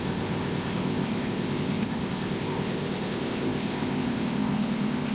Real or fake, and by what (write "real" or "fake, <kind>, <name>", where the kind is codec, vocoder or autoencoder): fake, codec, ZipCodec